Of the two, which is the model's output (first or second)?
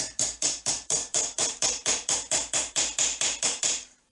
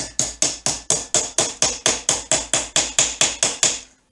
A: first